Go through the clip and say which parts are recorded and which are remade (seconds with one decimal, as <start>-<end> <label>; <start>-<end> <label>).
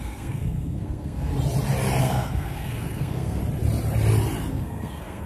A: 0.0-1.3 remade; 1.3-2.0 recorded; 2.0-3.4 remade; 3.4-4.5 recorded; 4.5-5.3 remade